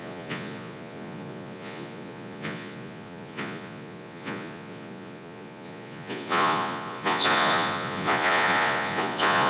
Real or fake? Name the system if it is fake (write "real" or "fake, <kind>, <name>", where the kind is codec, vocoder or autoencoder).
fake, vocoder, Vocos